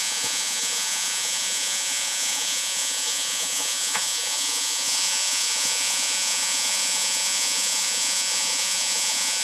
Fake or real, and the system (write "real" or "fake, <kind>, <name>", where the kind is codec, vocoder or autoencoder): fake, vocoder, Vocos